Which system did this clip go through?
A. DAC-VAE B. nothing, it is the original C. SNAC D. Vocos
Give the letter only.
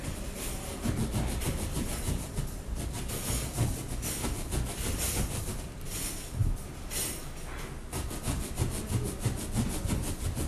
B